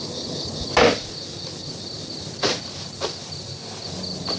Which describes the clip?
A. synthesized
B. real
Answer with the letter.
B